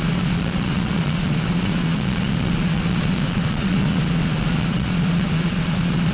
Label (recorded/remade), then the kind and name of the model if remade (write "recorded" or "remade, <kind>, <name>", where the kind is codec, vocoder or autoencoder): remade, vocoder, Vocos